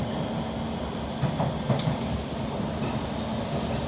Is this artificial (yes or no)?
no